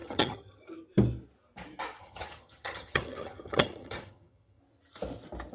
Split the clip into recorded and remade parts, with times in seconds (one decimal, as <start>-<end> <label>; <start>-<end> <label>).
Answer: 0.0-0.6 remade; 0.6-2.0 recorded; 2.0-4.6 remade; 4.6-5.5 recorded